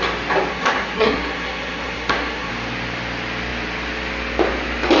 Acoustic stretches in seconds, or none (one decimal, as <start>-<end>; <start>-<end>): 0.0-0.5; 2.5-5.0

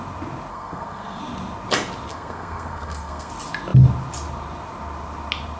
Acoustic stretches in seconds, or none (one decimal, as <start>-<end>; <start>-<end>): 0.0-0.5; 1.2-2.1; 3.3-5.6

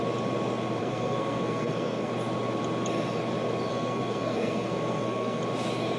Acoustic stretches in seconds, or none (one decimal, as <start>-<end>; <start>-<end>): 0.0-0.8; 2.1-3.7; 5.4-6.0